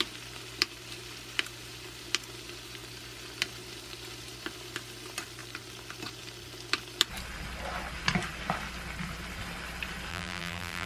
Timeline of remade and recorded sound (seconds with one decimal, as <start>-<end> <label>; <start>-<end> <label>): 0.0-10.1 recorded; 10.1-10.9 remade